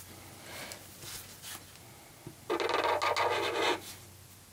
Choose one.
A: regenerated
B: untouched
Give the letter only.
B